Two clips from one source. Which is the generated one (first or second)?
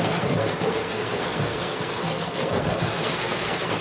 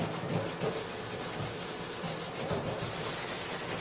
first